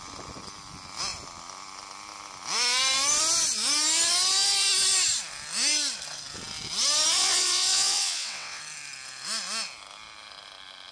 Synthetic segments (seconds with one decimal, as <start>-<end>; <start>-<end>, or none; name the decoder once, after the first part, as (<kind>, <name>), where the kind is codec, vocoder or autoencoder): 7.2-8.6 (vocoder, WaveNeXt)